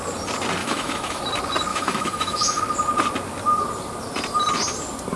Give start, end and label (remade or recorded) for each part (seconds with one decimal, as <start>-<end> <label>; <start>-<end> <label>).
0.0-0.6 recorded; 0.6-1.2 remade; 1.2-1.7 recorded; 1.7-2.6 remade; 2.6-5.2 recorded